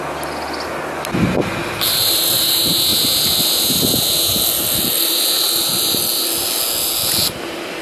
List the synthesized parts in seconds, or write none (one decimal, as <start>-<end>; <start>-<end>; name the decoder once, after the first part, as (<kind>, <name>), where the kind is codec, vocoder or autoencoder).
none